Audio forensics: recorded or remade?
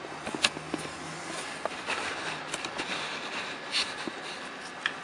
recorded